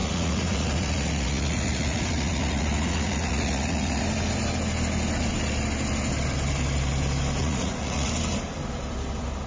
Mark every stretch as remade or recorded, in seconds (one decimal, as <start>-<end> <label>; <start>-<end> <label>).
0.0-4.0 remade; 4.0-7.4 recorded; 7.4-8.1 remade; 8.1-9.5 recorded